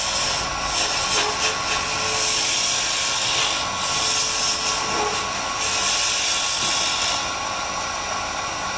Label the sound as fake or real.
real